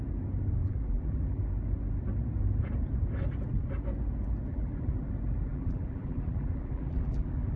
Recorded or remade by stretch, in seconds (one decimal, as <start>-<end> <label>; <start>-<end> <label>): 0.0-0.6 recorded; 0.6-1.4 remade; 1.4-4.5 recorded; 4.5-5.1 remade; 5.1-5.5 recorded; 5.5-7.6 remade